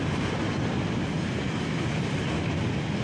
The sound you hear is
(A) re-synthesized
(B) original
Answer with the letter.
B